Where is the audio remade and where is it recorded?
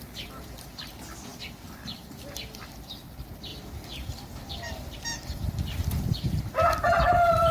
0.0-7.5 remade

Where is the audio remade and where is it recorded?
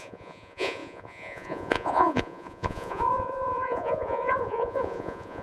0.0-5.4 remade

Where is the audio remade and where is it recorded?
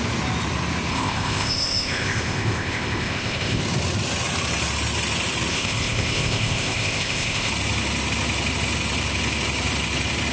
0.0-0.9 recorded; 0.9-3.6 remade; 3.6-5.5 recorded; 5.5-7.5 remade; 7.5-10.3 recorded